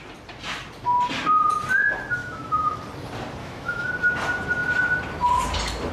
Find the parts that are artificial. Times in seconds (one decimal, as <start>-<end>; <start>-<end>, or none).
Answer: 2.2-2.8; 3.4-3.9